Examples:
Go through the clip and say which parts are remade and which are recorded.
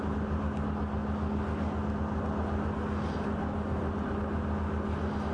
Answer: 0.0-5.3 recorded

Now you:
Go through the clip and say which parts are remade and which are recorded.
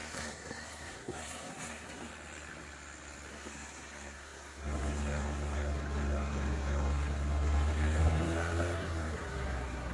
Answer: 0.0-2.1 remade; 2.1-3.3 recorded; 3.3-9.9 remade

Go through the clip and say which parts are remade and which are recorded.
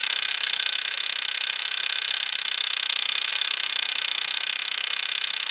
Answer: 0.0-5.5 remade